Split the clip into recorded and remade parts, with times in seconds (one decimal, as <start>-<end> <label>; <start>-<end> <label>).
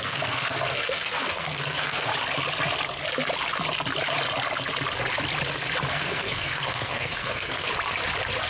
0.0-2.1 remade; 2.1-5.9 recorded; 5.9-7.7 remade; 7.7-8.5 recorded